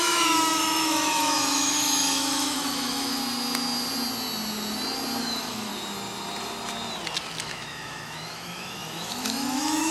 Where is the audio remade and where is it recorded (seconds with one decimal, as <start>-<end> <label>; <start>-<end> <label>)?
0.0-3.2 remade; 3.2-5.2 recorded; 5.2-5.7 remade; 5.7-7.4 recorded; 7.4-9.9 remade